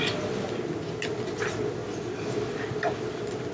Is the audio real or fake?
real